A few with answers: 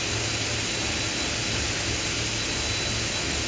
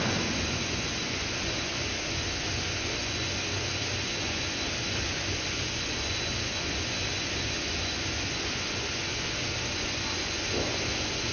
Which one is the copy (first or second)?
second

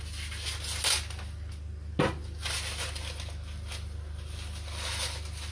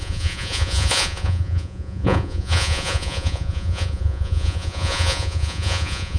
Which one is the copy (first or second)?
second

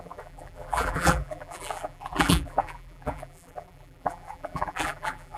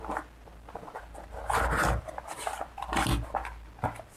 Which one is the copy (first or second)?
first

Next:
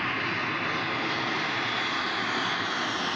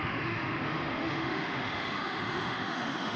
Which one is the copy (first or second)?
second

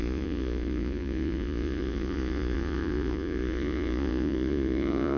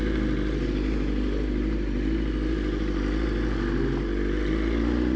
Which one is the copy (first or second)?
first